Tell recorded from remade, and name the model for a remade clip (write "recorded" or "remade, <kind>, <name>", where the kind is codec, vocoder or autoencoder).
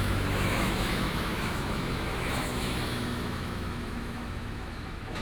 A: remade, autoencoder, DAC-VAE